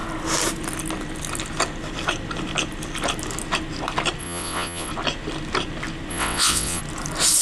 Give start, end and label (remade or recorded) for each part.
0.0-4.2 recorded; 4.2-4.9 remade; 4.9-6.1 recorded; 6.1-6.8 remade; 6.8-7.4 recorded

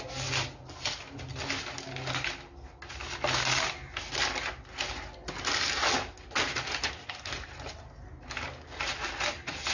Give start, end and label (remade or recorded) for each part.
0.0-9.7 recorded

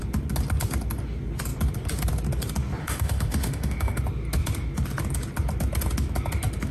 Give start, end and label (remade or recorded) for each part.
0.0-2.8 recorded; 2.8-4.0 remade; 4.0-6.7 recorded

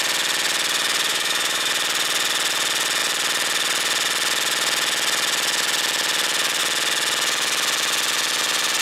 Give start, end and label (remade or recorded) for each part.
0.0-1.1 recorded; 1.1-1.7 remade; 1.7-8.8 recorded

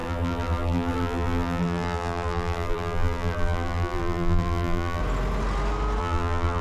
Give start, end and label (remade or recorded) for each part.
0.0-5.0 remade; 5.0-6.0 recorded; 6.0-6.6 remade